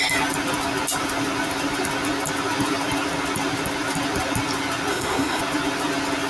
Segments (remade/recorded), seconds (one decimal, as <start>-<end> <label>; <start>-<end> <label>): 0.0-4.9 recorded; 4.9-5.4 remade; 5.4-6.3 recorded